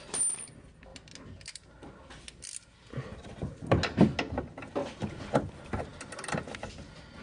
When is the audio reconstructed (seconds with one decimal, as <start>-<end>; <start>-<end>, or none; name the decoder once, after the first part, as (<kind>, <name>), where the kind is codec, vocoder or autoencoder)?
none